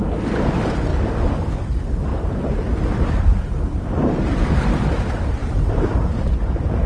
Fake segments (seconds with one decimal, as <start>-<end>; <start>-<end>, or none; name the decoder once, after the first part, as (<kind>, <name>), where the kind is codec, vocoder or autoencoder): 2.1-4.1 (vocoder, BigVGAN v2); 5.4-6.1